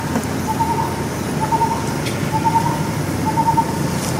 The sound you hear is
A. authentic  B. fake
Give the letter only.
A